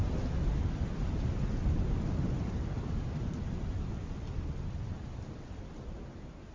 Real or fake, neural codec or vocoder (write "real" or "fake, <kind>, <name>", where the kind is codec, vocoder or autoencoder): real